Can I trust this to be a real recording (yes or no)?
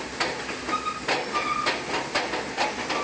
yes